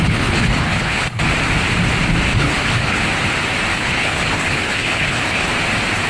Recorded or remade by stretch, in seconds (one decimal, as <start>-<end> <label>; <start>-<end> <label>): 0.0-1.2 remade; 1.2-2.3 recorded; 2.3-3.0 remade; 3.0-3.7 recorded; 3.7-5.5 remade; 5.5-6.1 recorded